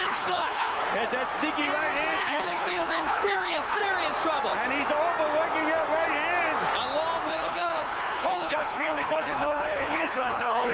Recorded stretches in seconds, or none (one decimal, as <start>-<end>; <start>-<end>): 0.8-2.2; 3.8-7.3